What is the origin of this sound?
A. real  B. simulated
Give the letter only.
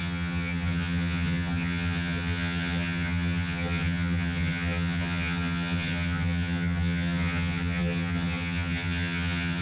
B